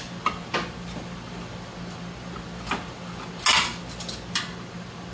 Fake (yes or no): no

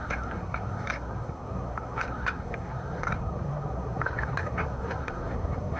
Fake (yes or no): yes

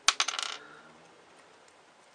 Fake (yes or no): no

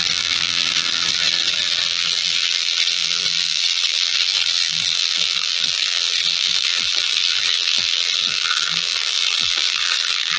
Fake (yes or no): yes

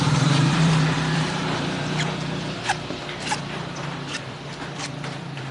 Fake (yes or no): yes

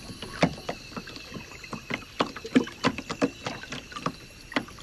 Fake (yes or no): no